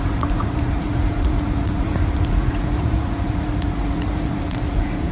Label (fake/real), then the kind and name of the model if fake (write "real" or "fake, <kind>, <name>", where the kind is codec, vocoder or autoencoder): fake, vocoder, Vocos